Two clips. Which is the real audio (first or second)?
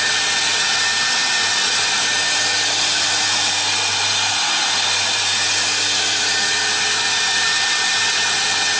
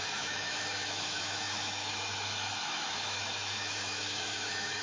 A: first